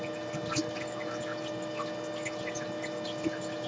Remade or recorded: recorded